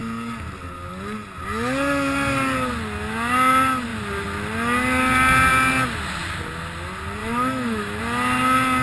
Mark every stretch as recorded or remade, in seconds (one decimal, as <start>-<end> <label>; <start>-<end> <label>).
0.0-7.2 recorded; 7.2-8.0 remade; 8.0-8.8 recorded